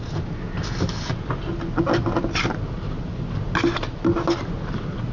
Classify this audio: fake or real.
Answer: real